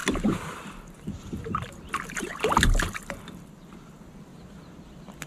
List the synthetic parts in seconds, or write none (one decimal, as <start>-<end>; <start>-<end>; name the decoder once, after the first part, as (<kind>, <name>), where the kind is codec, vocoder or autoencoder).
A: none